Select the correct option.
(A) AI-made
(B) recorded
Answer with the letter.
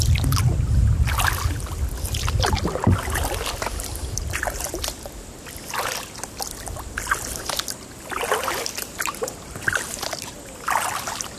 B